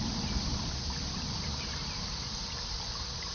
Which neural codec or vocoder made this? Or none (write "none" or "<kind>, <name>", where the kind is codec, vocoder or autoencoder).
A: vocoder, BigVGAN v2